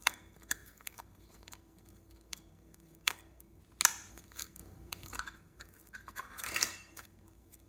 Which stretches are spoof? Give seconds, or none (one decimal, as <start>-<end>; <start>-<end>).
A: 0.0-3.6; 4.1-7.7